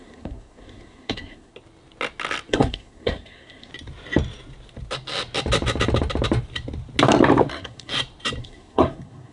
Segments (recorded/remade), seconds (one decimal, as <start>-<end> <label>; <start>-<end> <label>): 0.0-1.5 remade; 1.5-2.5 recorded; 2.5-3.7 remade; 3.7-7.5 recorded; 7.5-7.9 remade; 7.9-8.4 recorded; 8.4-9.3 remade